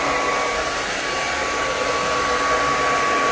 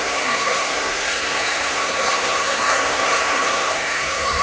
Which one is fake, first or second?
second